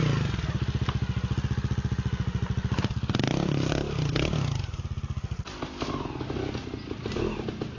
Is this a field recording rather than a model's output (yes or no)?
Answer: yes